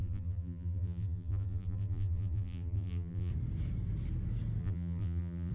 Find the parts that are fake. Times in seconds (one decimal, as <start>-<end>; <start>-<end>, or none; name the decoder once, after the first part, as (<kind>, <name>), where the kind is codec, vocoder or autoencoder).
0.0-3.3 (vocoder, BigVGAN v2); 4.6-5.5